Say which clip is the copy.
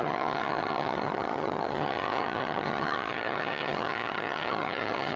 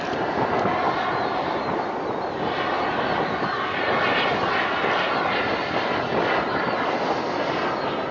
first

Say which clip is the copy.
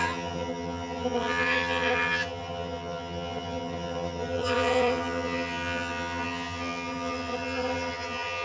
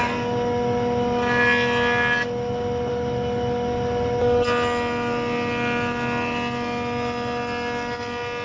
first